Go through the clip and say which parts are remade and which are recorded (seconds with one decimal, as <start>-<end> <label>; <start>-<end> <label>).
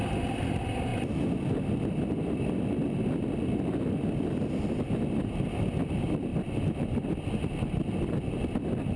0.0-9.0 recorded